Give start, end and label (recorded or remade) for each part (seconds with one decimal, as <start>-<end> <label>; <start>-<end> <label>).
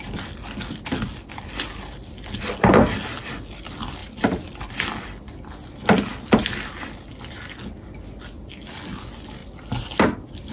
0.0-10.5 recorded